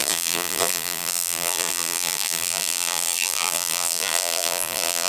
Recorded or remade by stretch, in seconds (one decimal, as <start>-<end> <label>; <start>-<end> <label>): 0.0-5.1 remade